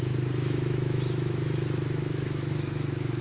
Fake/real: fake